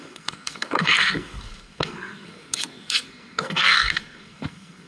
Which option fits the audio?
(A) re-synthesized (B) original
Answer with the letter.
A